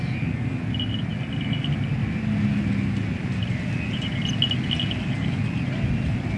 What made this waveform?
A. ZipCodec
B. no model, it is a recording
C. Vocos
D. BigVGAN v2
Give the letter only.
B